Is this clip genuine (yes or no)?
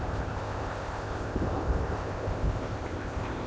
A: no